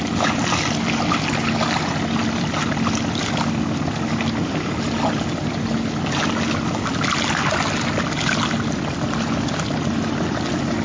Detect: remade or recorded recorded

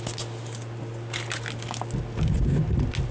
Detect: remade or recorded recorded